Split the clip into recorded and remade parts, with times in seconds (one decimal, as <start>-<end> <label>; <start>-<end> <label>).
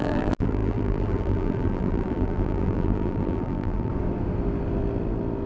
0.0-3.9 remade; 3.9-5.5 recorded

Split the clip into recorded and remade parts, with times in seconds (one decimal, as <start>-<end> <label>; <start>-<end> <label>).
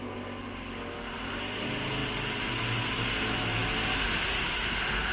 0.0-5.1 recorded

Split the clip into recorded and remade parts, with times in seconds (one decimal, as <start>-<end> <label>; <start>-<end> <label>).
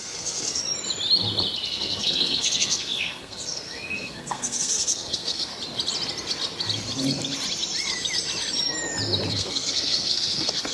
0.0-0.6 remade; 0.6-1.7 recorded; 1.7-5.5 remade; 5.5-9.3 recorded; 9.3-10.7 remade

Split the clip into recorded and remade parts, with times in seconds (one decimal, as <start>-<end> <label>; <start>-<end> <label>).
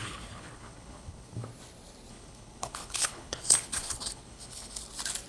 0.0-1.5 remade; 1.5-2.1 recorded; 2.1-4.8 remade; 4.8-5.3 recorded